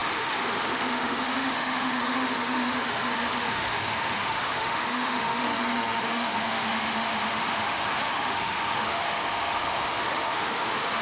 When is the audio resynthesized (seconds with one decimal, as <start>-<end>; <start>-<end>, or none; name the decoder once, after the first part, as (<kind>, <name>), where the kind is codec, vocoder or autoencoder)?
0.0-5.5 (autoencoder, DAC-VAE); 6.0-11.0